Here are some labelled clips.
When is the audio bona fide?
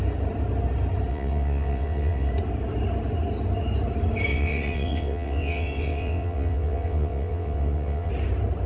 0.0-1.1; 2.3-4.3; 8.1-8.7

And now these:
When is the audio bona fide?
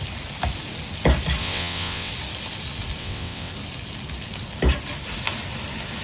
0.0-1.4; 2.1-3.0; 3.5-6.0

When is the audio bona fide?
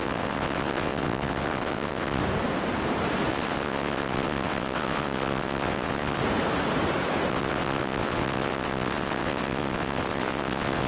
2.2-3.3; 6.2-7.3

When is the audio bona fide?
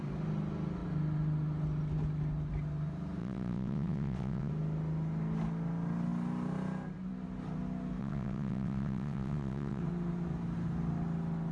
0.0-3.2; 4.5-8.0; 9.8-11.5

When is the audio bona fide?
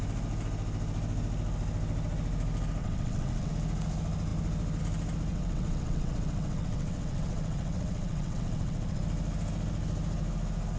0.0-2.8; 3.5-5.3; 9.0-10.8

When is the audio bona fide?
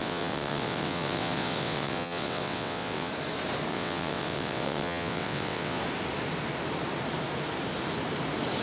3.1-3.7; 5.8-8.6